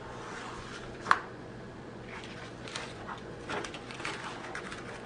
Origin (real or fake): fake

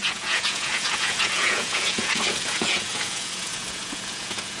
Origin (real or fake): fake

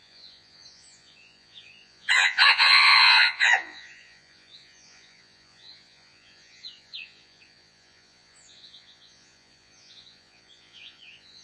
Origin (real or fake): fake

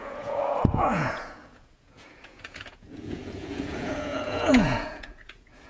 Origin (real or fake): fake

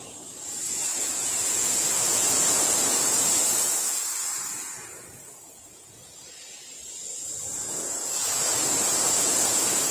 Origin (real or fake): fake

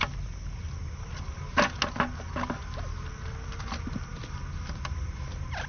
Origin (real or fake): real